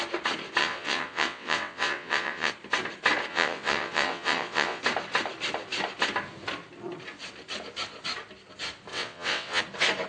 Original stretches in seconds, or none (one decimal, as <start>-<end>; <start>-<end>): 0.0-0.6; 2.5-3.3; 4.8-8.9; 9.6-10.1